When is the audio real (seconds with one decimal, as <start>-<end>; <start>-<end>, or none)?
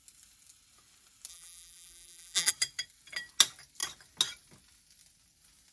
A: 0.0-1.3; 2.5-5.7